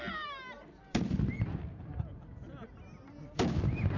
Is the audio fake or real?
real